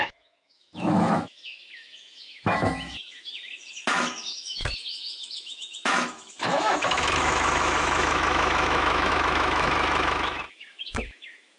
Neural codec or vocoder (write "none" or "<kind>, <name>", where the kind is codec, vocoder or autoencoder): autoencoder, DAC-VAE